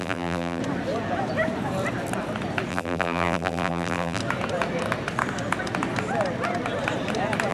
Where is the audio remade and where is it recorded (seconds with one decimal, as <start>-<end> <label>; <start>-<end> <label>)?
0.0-0.6 remade; 0.6-2.7 recorded; 2.7-4.2 remade; 4.2-7.5 recorded